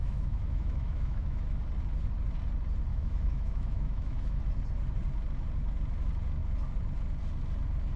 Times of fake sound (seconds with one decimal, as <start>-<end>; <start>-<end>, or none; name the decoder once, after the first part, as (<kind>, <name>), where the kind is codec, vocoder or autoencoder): 0.0-1.6 (autoencoder, DAC-VAE); 2.9-4.4